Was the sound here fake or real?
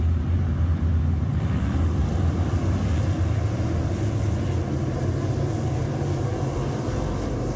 real